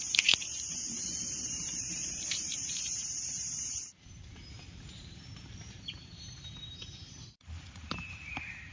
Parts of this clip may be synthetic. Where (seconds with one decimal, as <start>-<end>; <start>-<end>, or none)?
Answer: 0.0-0.9; 1.5-8.7